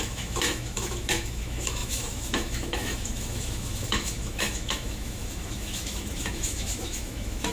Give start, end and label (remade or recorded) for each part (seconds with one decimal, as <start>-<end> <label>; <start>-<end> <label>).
0.0-7.5 remade